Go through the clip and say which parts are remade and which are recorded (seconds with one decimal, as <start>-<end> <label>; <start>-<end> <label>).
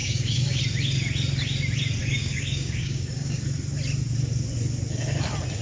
0.0-0.6 remade; 0.6-2.0 recorded; 2.0-3.4 remade; 3.4-5.6 recorded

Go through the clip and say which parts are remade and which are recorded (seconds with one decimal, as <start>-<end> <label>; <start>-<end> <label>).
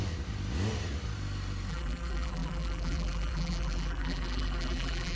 0.0-1.7 recorded; 1.7-5.2 remade